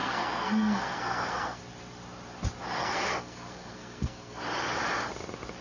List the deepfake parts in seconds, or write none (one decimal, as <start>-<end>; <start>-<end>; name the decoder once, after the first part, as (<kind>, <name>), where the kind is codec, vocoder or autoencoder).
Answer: 0.0-1.6 (codec, SNAC); 2.8-4.4